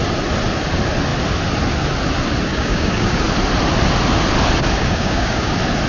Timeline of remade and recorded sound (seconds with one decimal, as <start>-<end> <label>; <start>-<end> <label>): 0.0-2.5 recorded; 2.5-3.2 remade; 3.2-4.8 recorded; 4.8-5.5 remade; 5.5-5.9 recorded